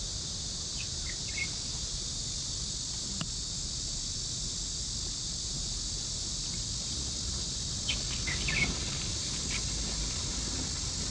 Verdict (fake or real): real